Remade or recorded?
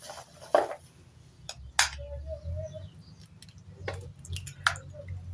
recorded